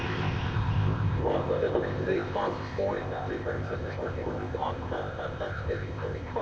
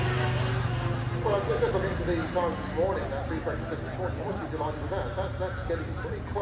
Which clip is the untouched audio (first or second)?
second